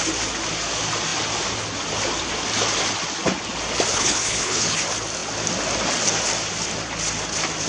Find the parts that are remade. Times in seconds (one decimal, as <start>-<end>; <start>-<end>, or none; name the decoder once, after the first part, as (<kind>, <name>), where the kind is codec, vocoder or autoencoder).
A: 3.9-4.8 (codec, HILCodec)